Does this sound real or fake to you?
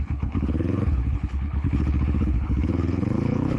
fake